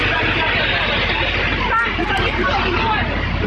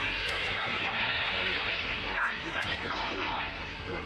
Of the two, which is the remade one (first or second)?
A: second